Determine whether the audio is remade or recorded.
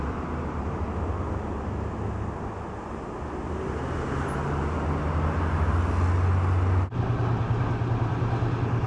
recorded